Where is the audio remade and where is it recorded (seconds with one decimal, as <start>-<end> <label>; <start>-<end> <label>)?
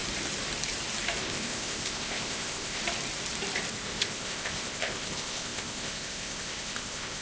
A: 0.0-1.2 recorded; 1.2-2.8 remade; 2.8-3.7 recorded; 3.7-7.2 remade